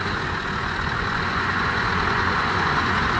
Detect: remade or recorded remade